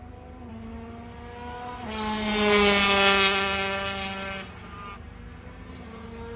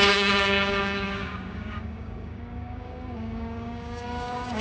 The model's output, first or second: second